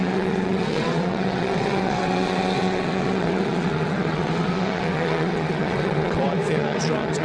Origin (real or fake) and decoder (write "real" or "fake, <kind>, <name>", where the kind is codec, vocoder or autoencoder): fake, vocoder, WaveNeXt